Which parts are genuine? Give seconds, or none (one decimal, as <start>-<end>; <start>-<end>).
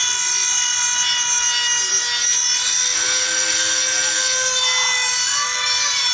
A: 0.0-6.1